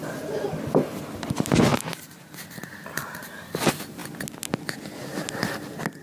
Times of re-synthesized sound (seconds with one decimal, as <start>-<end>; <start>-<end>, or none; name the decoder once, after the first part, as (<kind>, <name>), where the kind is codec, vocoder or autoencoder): 1.7-3.3 (vocoder, BigVGAN v2)